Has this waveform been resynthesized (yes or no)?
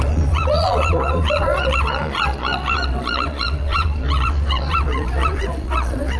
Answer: yes